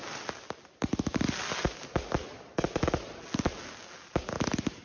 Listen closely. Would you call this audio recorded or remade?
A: recorded